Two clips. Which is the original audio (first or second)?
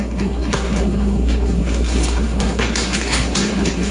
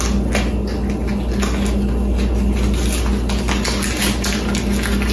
second